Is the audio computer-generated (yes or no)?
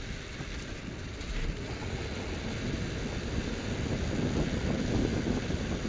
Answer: no